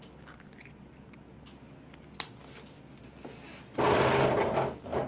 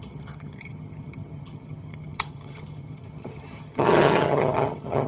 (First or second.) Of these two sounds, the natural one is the first